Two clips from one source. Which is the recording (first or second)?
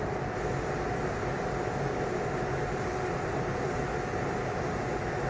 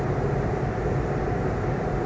first